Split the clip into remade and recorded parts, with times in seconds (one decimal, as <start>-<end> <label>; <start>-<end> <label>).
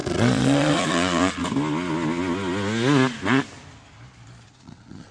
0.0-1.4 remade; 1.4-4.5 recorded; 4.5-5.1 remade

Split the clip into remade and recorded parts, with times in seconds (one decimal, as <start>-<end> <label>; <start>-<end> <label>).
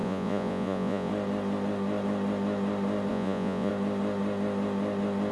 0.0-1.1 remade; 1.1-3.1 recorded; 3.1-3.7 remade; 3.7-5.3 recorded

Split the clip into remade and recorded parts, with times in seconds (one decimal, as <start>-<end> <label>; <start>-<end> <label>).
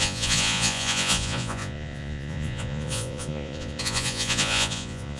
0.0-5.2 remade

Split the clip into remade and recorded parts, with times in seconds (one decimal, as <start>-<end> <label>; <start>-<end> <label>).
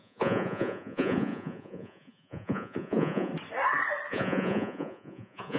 0.0-3.3 remade; 3.3-4.1 recorded; 4.1-5.6 remade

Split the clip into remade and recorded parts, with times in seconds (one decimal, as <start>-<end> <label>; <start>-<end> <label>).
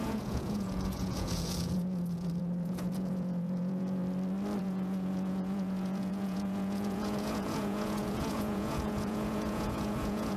0.0-4.0 remade; 4.0-4.6 recorded; 4.6-10.4 remade